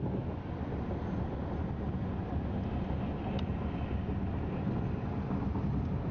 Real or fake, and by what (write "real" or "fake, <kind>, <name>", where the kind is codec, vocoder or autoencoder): real